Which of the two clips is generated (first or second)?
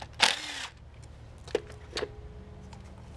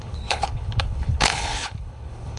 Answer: second